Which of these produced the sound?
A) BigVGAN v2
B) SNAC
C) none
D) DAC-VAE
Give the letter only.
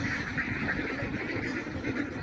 C